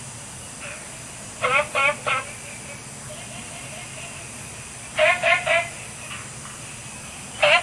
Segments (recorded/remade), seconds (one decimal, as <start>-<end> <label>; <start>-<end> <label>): 0.0-7.6 recorded